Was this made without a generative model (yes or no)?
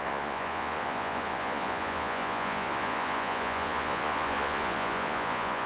no